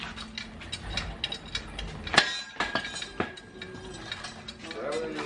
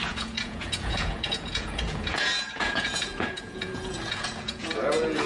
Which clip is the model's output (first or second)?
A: second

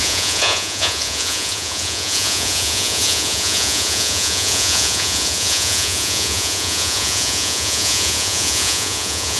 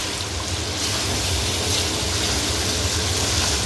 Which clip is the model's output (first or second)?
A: first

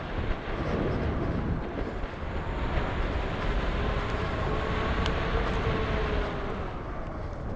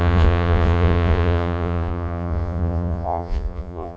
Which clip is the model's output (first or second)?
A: second